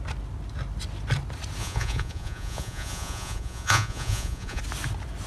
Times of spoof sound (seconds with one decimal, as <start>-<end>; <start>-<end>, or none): 1.6-4.6